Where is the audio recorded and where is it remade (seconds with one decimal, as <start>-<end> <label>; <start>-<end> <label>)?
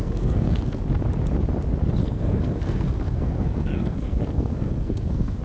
0.0-0.8 remade; 0.8-2.0 recorded; 2.0-5.4 remade